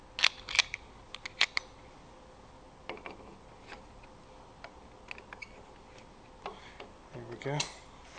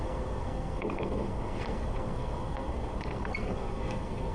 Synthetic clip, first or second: second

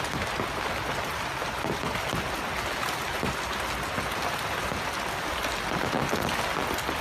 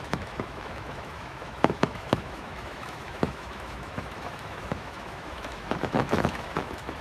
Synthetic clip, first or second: second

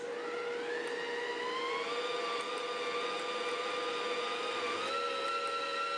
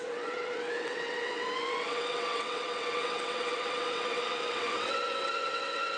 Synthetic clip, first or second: second